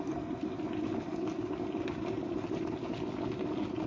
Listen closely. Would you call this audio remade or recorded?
recorded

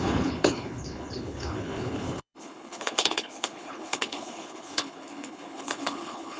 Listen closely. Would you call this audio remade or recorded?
remade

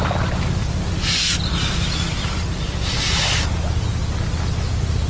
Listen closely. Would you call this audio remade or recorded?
recorded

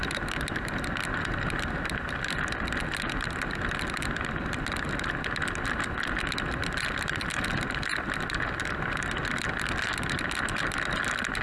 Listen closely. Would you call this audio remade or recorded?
recorded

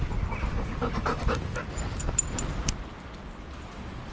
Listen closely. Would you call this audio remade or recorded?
recorded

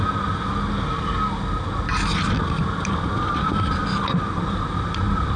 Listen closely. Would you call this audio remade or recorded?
recorded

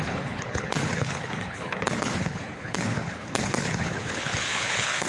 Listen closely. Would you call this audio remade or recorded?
remade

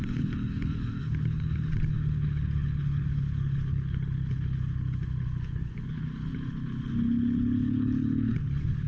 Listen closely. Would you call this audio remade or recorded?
remade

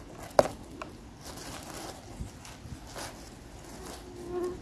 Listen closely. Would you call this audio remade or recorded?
recorded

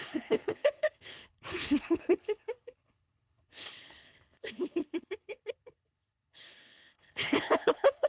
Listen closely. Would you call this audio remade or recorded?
remade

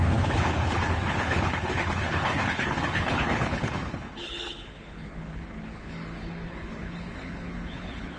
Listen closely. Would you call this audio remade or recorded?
remade